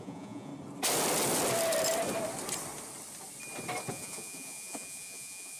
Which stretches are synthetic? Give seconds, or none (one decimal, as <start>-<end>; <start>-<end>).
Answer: 0.0-0.5; 3.9-5.6